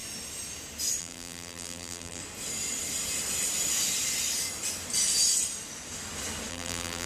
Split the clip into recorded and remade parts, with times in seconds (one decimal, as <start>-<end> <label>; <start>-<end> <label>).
0.0-1.0 recorded; 1.0-2.2 remade; 2.2-6.5 recorded; 6.5-7.1 remade